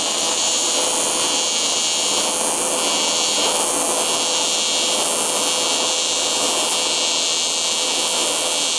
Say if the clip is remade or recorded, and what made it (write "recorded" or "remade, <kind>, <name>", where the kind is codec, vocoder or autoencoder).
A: recorded